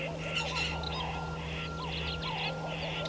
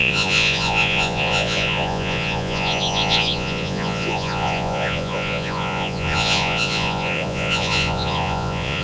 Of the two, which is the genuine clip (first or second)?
first